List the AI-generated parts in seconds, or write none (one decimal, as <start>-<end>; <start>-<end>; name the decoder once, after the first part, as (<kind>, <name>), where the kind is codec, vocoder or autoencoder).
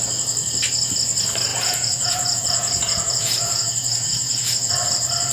1.5-4.7 (vocoder, Vocos)